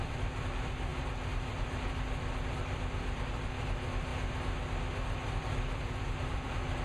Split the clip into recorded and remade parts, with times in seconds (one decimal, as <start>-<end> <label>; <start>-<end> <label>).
0.0-4.1 remade; 4.1-5.4 recorded; 5.4-6.8 remade